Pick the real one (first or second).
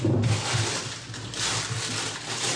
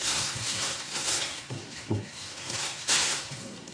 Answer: first